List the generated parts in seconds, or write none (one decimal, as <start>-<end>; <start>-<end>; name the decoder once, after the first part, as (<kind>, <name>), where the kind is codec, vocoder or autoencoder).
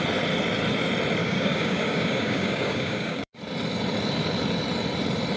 1.2-3.4 (codec, DAC)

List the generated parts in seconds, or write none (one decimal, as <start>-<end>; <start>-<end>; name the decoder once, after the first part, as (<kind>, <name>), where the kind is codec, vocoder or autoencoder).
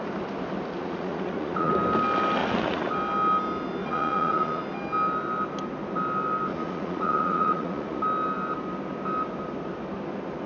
0.8-1.7 (vocoder, Vocos); 2.4-2.9; 3.8-4.6; 6.5-8.0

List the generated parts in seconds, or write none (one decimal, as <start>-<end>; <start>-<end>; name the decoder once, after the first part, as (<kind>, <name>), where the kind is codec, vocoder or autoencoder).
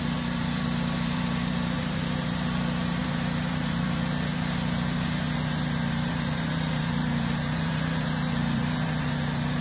0.0-9.6 (vocoder, BigVGAN v2)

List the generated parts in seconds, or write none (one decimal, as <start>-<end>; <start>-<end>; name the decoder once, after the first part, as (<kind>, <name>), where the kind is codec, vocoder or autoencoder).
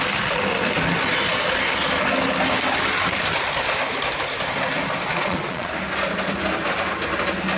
5.1-5.7 (vocoder, Vocos)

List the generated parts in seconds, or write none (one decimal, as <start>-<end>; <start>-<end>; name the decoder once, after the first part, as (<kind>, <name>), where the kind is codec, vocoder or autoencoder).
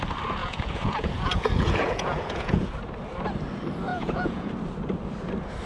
0.4-2.7 (vocoder, Vocos); 3.9-4.5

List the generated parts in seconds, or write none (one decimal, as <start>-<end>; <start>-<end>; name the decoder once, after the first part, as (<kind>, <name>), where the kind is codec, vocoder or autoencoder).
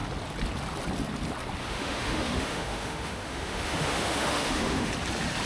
1.6-4.9 (autoencoder, DAC-VAE)